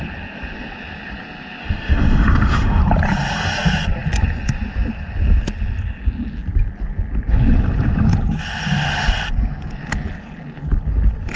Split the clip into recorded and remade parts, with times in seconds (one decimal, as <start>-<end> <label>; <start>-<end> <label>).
0.0-1.6 recorded; 1.6-2.8 remade; 2.8-11.4 recorded